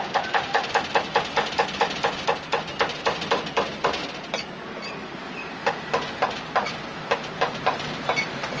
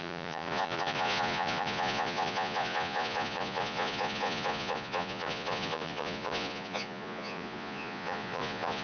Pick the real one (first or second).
first